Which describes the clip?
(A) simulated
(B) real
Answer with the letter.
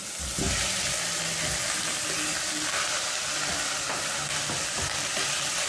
B